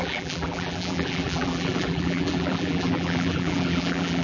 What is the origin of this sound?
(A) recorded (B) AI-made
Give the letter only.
B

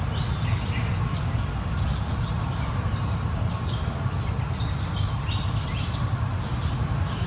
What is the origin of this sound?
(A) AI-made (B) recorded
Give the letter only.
A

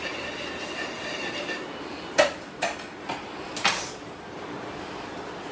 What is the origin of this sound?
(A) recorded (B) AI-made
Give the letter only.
A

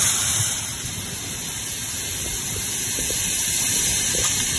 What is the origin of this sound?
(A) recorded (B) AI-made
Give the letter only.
B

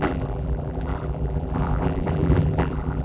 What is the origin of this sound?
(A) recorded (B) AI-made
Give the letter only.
B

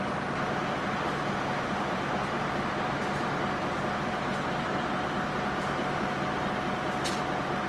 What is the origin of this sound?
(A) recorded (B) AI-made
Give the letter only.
A